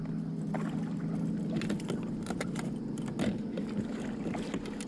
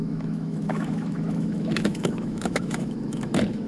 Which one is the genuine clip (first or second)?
first